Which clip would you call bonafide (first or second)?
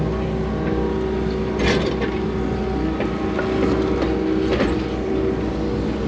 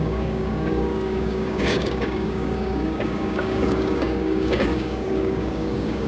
first